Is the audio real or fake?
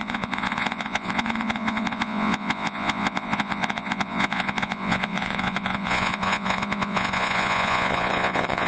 fake